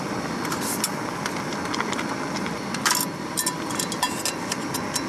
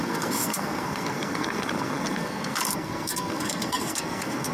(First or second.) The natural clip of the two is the first